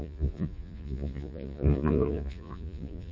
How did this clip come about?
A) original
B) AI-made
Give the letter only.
B